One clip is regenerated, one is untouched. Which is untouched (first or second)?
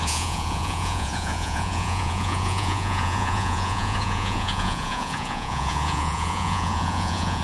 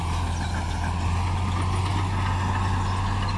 second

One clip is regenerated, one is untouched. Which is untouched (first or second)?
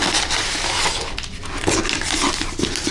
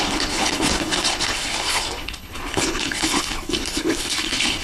first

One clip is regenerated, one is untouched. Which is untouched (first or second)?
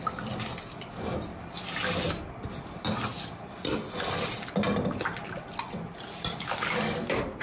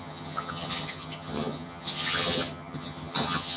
first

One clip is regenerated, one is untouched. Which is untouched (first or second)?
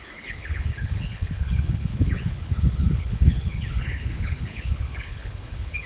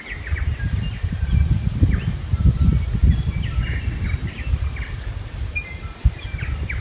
second